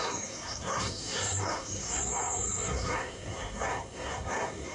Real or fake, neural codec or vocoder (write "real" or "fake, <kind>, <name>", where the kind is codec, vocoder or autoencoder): fake, codec, SNAC